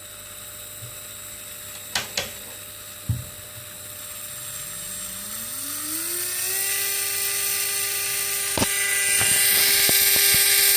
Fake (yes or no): no